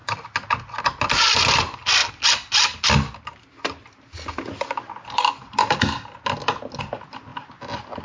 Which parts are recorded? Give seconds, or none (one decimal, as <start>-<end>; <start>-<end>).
0.0-8.0